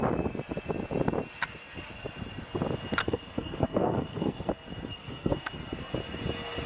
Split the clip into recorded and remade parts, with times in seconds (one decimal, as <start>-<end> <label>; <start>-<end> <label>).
0.0-3.0 recorded; 3.0-4.5 remade; 4.5-4.9 recorded; 4.9-5.5 remade; 5.5-6.7 recorded